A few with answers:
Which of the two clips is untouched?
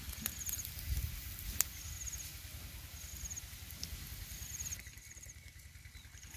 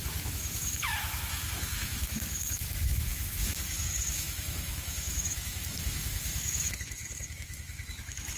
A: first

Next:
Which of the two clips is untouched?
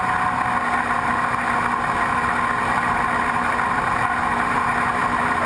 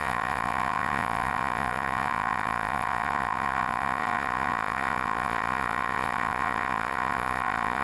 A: first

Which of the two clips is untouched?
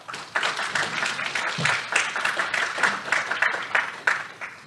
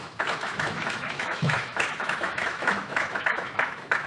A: first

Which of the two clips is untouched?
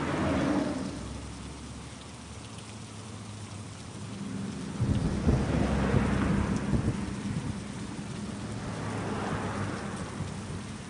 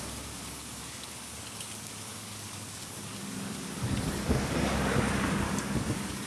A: first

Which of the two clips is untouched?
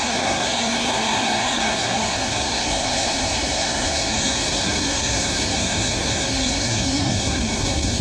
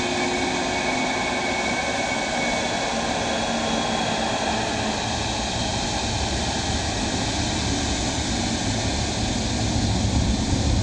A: second